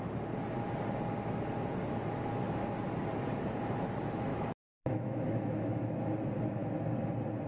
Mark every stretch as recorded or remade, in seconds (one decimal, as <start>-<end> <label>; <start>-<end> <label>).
0.0-4.3 recorded; 4.3-5.9 remade; 5.9-7.5 recorded